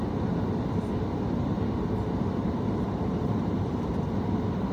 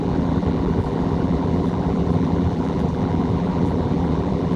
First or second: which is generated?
second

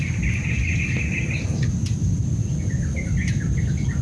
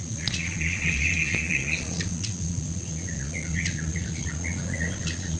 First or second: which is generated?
second